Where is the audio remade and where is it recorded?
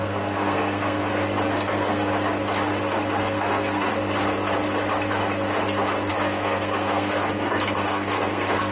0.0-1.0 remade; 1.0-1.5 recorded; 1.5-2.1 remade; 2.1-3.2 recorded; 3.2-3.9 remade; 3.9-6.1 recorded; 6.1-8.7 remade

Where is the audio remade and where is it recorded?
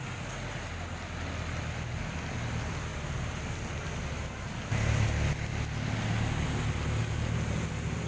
0.0-8.1 recorded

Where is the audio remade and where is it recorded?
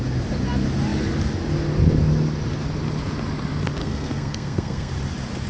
0.0-3.8 recorded; 3.8-4.9 remade; 4.9-5.5 recorded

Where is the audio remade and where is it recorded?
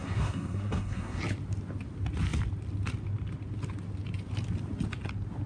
0.0-1.2 remade; 1.2-5.5 recorded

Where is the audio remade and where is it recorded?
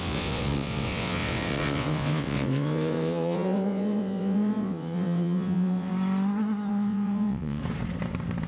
0.0-5.9 remade; 5.9-6.7 recorded; 6.7-7.6 remade; 7.6-8.5 recorded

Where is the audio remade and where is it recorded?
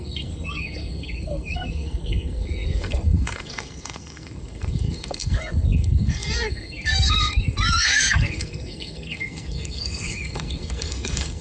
0.0-11.4 remade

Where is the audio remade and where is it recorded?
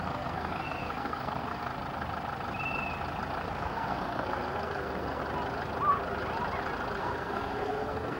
0.0-1.7 remade; 1.7-3.4 recorded; 3.4-5.2 remade; 5.2-7.0 recorded; 7.0-8.2 remade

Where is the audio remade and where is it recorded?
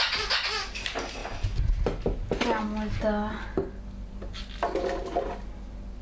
0.0-6.0 recorded